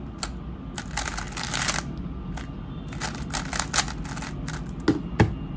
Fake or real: real